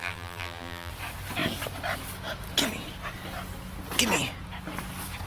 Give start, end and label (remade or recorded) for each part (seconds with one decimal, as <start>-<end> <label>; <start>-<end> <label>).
0.0-0.9 remade; 0.9-5.3 recorded